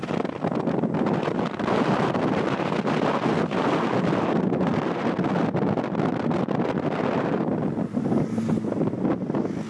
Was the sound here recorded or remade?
recorded